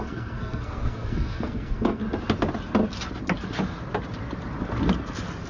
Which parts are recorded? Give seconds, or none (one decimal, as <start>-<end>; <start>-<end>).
2.0-5.5